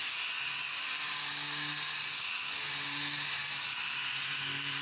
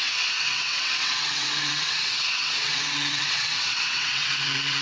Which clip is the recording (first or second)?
first